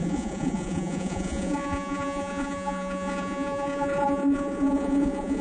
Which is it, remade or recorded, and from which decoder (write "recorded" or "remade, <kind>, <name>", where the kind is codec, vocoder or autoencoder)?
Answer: remade, vocoder, Vocos